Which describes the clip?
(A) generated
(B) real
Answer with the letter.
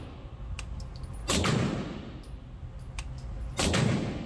B